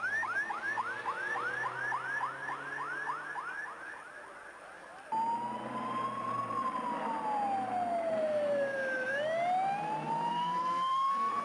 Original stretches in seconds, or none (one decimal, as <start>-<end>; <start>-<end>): 0.0-10.3